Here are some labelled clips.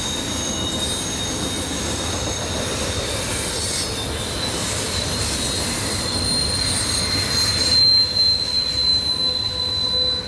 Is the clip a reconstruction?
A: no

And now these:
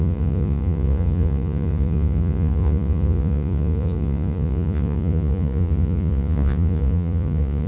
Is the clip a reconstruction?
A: yes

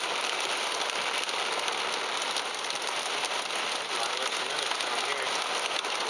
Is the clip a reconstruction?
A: no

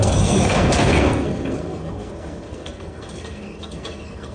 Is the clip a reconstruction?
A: yes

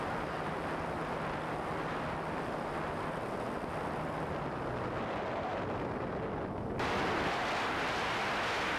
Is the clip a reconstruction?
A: no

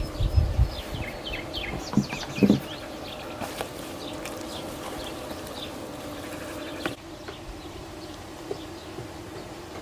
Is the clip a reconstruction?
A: no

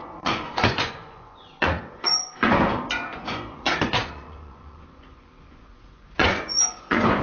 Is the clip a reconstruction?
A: yes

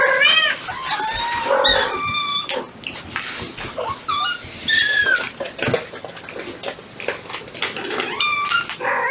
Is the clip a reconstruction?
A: no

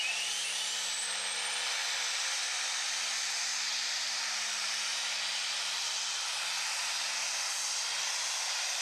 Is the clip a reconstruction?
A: no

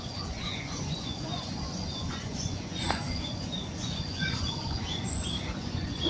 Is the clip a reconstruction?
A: yes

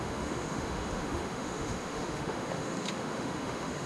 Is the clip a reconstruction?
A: yes